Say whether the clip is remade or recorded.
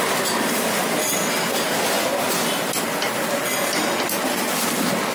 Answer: recorded